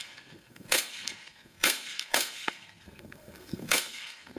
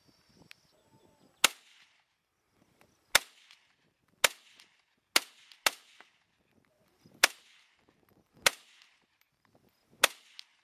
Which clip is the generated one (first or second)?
first